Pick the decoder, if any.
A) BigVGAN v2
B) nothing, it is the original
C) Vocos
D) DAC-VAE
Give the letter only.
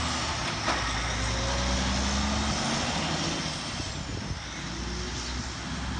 B